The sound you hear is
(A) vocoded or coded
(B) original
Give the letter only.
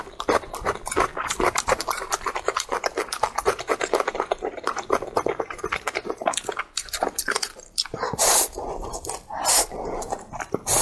A